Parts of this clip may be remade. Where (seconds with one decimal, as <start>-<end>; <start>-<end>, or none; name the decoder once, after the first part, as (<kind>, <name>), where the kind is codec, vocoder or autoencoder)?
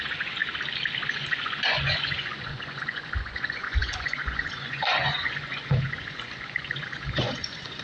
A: 0.0-0.4 (vocoder, Vocos); 1.1-7.8